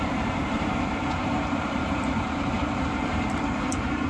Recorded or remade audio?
remade